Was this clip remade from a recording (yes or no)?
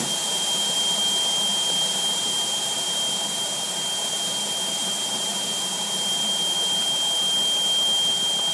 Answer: yes